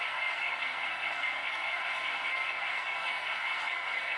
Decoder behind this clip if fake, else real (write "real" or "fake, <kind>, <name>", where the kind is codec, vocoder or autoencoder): fake, codec, SNAC